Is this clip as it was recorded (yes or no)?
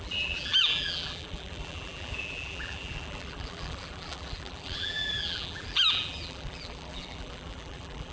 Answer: no